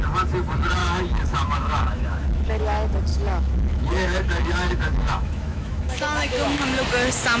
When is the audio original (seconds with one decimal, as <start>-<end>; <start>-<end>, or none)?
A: 0.0-0.8; 2.6-3.1; 6.8-7.4